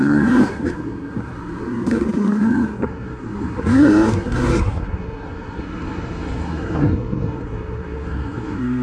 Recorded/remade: remade